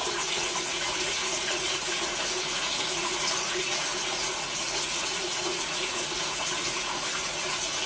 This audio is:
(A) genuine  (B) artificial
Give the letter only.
B